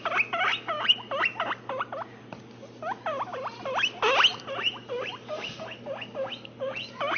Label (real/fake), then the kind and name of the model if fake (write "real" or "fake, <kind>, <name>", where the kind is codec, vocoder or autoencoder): real